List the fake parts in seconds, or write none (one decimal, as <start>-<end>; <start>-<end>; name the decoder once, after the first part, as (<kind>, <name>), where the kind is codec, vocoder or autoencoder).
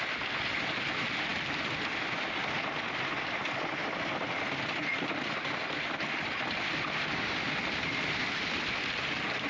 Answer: none